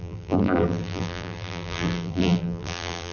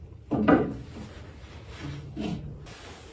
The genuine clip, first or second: second